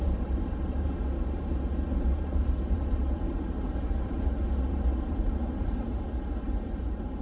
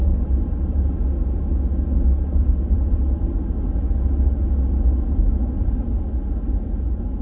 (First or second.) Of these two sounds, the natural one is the second